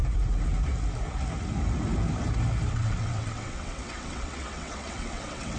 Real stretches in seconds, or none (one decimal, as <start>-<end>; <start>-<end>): 0.0-2.7